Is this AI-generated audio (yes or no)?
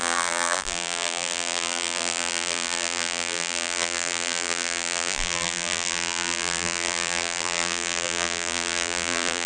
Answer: yes